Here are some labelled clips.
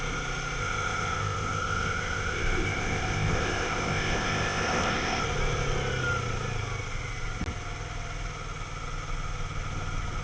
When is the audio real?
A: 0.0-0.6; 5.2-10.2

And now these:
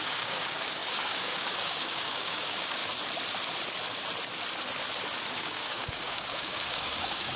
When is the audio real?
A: 2.8-5.3

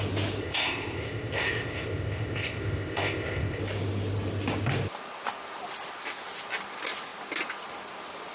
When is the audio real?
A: 0.0-0.4; 3.6-8.3